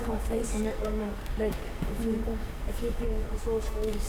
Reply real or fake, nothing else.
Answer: fake